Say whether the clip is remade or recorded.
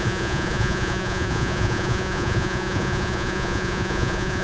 remade